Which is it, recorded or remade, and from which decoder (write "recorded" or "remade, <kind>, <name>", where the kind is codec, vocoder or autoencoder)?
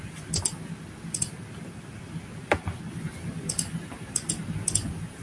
recorded